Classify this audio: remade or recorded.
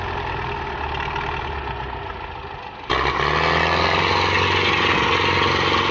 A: recorded